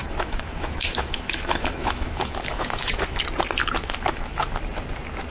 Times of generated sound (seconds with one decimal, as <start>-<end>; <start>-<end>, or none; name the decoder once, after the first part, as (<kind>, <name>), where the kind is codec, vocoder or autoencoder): 0.0-3.2 (autoencoder, DAC-VAE); 3.6-4.5